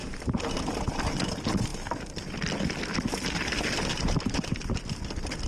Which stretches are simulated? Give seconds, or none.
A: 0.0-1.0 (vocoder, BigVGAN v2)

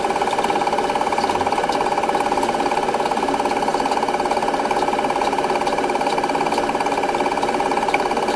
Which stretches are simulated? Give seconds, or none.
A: none